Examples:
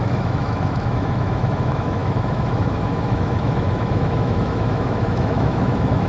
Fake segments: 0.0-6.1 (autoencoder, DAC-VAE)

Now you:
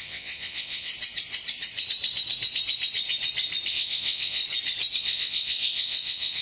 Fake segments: 0.0-0.9 (vocoder, WaveNeXt); 3.7-4.4; 5.0-6.4

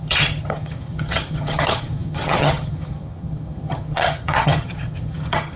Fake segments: 0.0-5.6 (vocoder, HiFi-GAN)

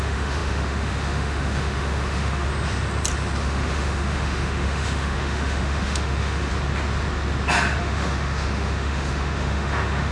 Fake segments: 0.0-2.5 (autoencoder, DAC-VAE); 3.4-6.5; 7.8-10.1

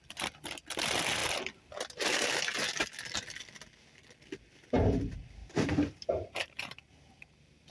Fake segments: 5.4-7.7 (vocoder, BigVGAN v2)

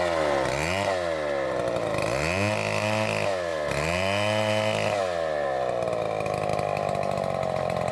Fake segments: none

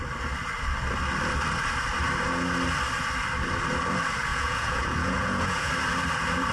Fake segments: 4.3-5.7 (vocoder, Vocos)